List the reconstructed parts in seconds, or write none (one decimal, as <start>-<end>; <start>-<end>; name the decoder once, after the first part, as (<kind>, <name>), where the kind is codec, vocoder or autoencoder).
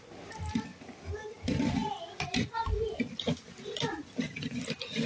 none